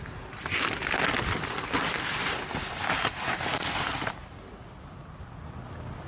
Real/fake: real